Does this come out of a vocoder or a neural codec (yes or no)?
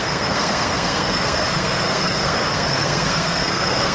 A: yes